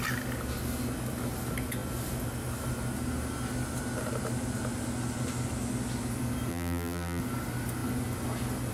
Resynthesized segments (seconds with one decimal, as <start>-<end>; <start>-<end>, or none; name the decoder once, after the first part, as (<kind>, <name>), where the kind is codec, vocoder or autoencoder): 6.5-7.2 (vocoder, BigVGAN v2)